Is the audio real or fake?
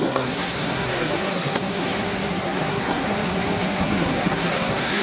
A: fake